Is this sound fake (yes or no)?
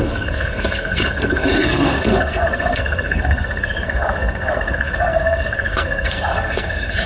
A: yes